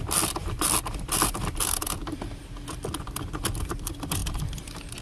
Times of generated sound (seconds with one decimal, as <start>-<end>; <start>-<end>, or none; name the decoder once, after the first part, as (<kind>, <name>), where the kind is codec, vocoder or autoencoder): 0.0-2.0 (vocoder, BigVGAN v2); 3.6-4.2